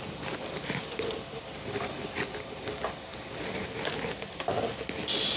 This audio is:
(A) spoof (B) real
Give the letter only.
B